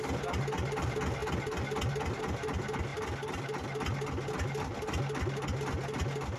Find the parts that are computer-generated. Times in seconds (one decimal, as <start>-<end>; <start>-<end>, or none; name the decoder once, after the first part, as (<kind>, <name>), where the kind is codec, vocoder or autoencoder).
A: none